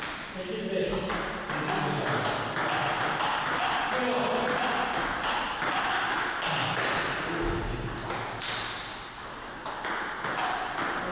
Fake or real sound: real